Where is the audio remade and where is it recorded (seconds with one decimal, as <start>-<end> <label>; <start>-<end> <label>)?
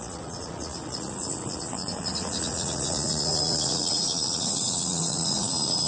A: 0.0-5.9 remade